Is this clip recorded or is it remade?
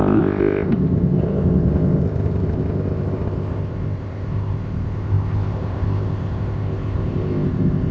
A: remade